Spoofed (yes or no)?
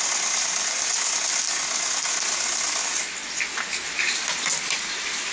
no